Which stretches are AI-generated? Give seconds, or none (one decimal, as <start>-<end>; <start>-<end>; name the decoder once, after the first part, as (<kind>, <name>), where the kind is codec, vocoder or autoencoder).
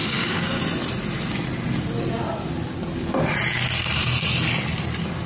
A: 0.0-0.6 (codec, DAC)